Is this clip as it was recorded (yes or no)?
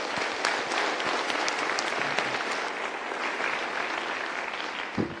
yes